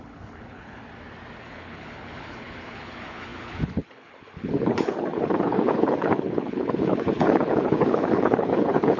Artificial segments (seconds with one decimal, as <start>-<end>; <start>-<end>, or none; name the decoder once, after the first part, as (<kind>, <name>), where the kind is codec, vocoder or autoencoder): 0.0-0.8 (codec, HILCodec); 1.4-9.0